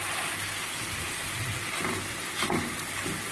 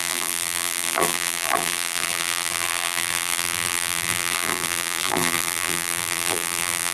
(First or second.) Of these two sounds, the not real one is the second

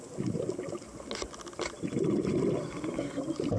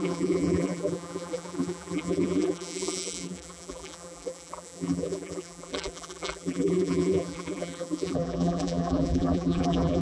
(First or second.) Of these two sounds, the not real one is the second